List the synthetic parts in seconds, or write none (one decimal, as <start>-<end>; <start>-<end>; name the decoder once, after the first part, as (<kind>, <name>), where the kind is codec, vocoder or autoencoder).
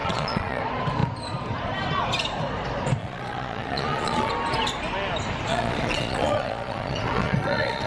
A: 0.0-0.6 (vocoder, Vocos); 3.0-4.3; 5.5-7.9